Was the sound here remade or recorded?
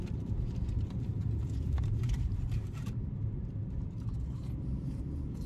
remade